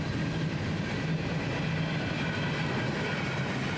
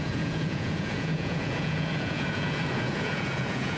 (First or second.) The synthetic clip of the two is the second